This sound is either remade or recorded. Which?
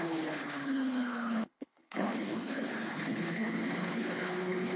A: remade